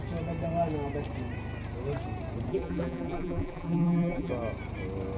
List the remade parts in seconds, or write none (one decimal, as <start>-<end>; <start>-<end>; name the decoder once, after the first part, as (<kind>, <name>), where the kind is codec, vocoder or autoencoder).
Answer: 2.5-4.3 (vocoder, BigVGAN v2)